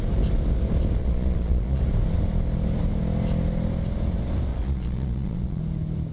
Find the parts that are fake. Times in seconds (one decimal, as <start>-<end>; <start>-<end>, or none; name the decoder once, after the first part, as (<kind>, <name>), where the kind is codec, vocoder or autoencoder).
1.0-1.8 (vocoder, Vocos); 4.5-5.6